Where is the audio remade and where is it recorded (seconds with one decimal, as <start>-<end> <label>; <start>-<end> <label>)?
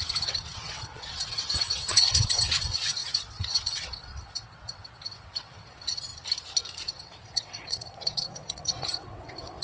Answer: 0.0-6.1 remade; 6.1-6.8 recorded; 6.8-9.6 remade